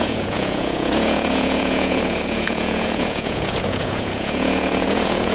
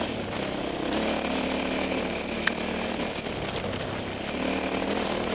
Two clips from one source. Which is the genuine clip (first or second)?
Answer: second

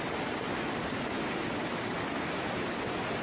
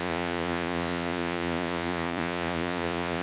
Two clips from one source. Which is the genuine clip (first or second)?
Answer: first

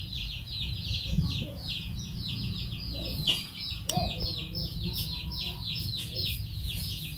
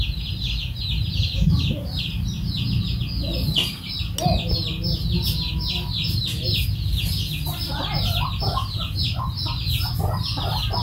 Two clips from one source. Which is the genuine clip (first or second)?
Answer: second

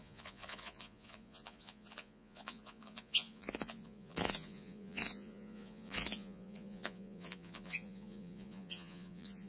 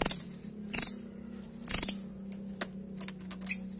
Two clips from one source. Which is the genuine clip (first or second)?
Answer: second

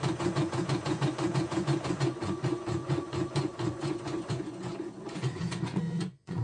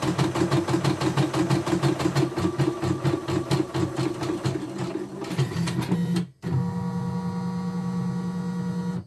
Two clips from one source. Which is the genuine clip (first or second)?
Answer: second